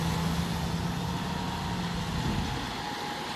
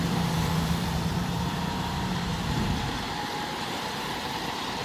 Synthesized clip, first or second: second